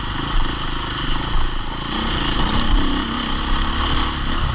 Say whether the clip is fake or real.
real